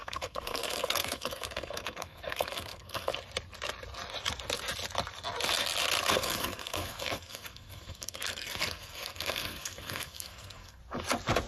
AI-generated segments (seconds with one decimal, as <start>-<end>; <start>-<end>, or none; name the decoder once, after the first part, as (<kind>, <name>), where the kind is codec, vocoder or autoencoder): 0.0-3.1 (codec, SNAC); 6.1-10.8